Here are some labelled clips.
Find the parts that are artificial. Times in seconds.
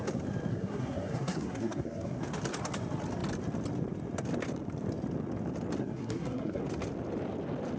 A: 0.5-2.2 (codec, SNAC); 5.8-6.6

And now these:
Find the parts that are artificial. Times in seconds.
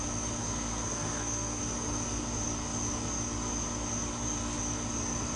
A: 0.4-1.6 (codec, SNAC)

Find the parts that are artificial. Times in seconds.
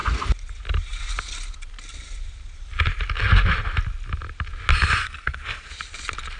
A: 5.0-5.7 (codec, SNAC)